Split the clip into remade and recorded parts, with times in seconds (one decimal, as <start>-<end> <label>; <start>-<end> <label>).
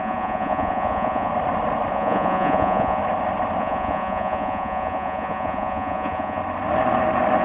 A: 0.0-1.3 remade; 1.3-1.9 recorded; 1.9-3.0 remade; 3.0-3.6 recorded; 3.6-6.4 remade; 6.4-7.4 recorded